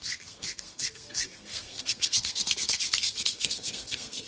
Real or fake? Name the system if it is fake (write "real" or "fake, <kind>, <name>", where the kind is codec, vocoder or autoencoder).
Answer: fake, codec, SNAC